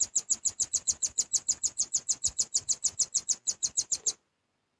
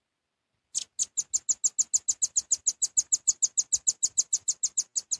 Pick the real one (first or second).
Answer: second